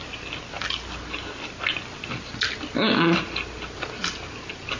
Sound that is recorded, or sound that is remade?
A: recorded